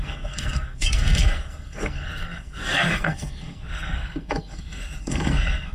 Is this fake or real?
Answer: fake